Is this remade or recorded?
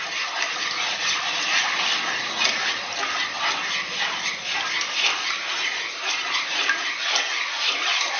remade